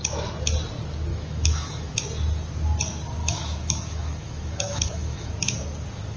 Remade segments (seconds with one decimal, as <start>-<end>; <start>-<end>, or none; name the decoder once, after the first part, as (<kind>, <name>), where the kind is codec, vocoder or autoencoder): 1.1-1.9 (autoencoder, DAC-VAE); 3.2-5.3